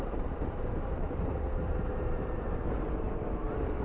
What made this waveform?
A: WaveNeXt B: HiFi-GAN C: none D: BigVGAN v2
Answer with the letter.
D